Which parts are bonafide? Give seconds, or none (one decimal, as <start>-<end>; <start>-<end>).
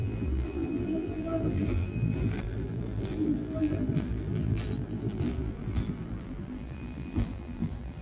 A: none